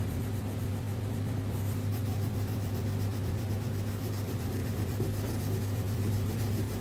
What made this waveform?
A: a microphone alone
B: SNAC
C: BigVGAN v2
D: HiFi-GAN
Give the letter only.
C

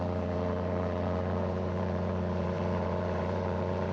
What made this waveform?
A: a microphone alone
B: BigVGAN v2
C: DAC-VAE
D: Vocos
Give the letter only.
B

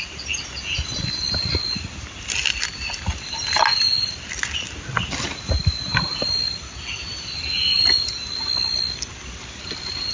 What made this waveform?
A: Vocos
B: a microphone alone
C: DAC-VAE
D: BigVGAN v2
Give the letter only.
B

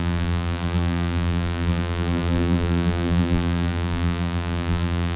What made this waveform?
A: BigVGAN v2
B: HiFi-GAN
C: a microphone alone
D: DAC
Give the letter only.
A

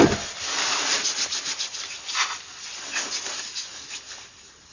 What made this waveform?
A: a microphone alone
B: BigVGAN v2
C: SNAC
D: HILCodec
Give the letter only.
A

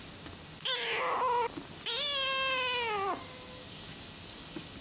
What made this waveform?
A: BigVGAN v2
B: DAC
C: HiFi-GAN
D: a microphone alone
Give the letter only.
D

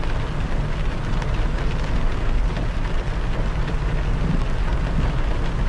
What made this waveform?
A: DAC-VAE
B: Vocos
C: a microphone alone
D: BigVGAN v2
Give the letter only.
C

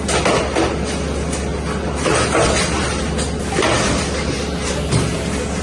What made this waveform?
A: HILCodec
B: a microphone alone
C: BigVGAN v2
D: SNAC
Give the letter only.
B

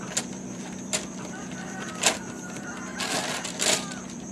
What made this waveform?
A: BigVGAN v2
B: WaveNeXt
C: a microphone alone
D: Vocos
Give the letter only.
A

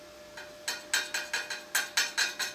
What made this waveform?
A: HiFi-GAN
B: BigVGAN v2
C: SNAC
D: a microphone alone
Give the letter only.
D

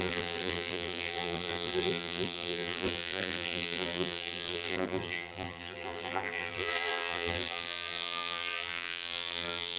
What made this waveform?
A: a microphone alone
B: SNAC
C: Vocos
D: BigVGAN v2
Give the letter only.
D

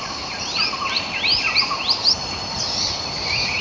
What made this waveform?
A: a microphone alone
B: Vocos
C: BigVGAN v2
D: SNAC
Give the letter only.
C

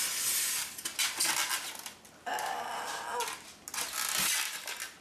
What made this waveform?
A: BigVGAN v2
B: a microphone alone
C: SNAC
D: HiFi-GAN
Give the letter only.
B